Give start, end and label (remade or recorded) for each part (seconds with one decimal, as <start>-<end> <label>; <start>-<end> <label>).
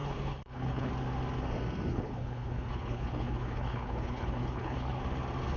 0.0-0.9 remade; 0.9-1.9 recorded; 1.9-5.0 remade; 5.0-5.6 recorded